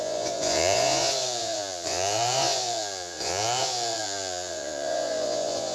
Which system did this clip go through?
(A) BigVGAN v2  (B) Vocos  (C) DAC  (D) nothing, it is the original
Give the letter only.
B